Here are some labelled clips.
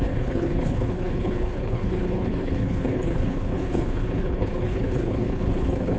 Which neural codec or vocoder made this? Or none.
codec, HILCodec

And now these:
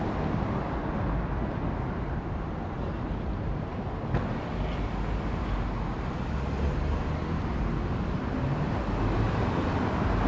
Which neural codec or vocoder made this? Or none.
none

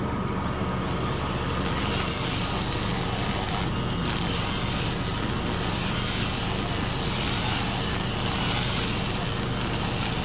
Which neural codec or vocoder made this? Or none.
none